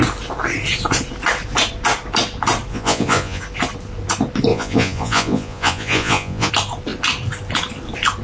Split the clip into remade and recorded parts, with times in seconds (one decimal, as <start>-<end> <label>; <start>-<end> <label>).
0.0-2.7 recorded; 2.7-3.4 remade; 3.4-4.5 recorded; 4.5-6.5 remade; 6.5-8.2 recorded